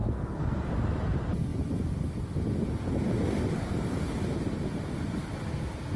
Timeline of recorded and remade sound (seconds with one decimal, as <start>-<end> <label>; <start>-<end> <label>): 0.0-0.7 remade; 0.7-6.0 recorded

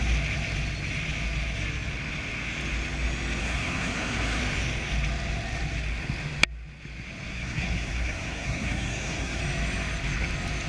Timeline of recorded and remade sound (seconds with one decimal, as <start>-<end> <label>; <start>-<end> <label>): 0.0-3.4 recorded; 3.4-4.4 remade; 4.4-7.3 recorded; 7.3-9.4 remade; 9.4-10.7 recorded

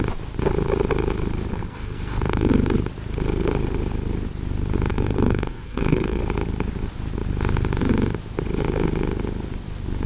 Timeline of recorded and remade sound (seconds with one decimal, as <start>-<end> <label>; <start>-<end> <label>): 0.0-1.5 recorded; 1.5-2.5 remade; 2.5-4.9 recorded; 4.9-6.2 remade; 6.2-10.1 recorded

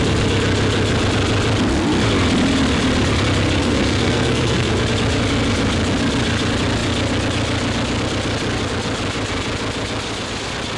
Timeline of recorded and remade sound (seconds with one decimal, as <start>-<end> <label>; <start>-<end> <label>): 0.0-3.6 recorded; 3.6-4.7 remade; 4.7-10.8 recorded

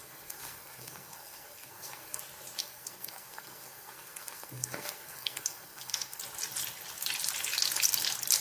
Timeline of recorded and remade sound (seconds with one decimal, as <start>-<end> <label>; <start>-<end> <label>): 0.0-2.2 remade; 2.2-2.6 recorded; 2.6-6.2 remade; 6.2-8.4 recorded

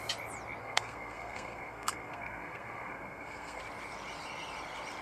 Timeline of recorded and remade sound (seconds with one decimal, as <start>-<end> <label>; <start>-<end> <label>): 0.0-0.6 recorded; 0.6-3.6 remade; 3.6-5.0 recorded